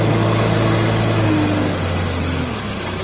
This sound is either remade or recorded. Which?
recorded